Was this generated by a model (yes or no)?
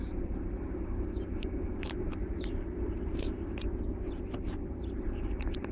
yes